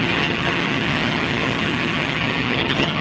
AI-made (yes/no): yes